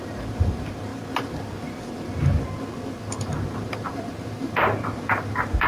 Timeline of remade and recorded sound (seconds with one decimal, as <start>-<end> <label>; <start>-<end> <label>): 0.0-0.9 remade; 0.9-3.2 recorded; 3.2-5.7 remade